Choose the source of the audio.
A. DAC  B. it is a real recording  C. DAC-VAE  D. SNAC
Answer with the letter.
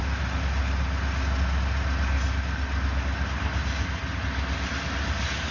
B